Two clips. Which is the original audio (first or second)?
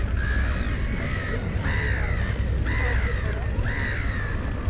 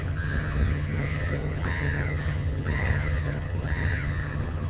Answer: first